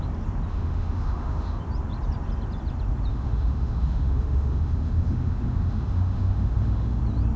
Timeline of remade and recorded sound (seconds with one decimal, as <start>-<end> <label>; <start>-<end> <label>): 0.0-0.5 recorded; 0.5-1.6 remade; 1.6-3.1 recorded; 3.1-7.0 remade; 7.0-7.4 recorded